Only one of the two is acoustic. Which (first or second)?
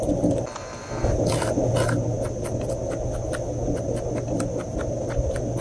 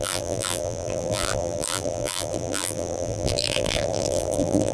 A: first